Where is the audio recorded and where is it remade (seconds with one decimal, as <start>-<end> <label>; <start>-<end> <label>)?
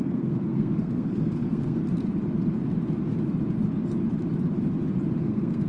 0.0-1.8 remade; 1.8-5.2 recorded; 5.2-5.7 remade